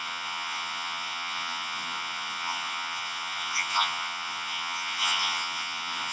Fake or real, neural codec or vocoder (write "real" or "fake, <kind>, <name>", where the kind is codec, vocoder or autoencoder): fake, vocoder, Vocos